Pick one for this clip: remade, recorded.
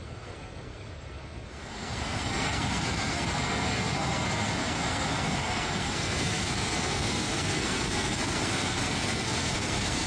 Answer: remade